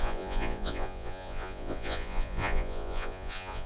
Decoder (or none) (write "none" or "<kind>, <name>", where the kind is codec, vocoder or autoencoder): vocoder, Vocos